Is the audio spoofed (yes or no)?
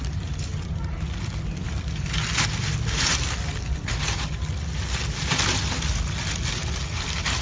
no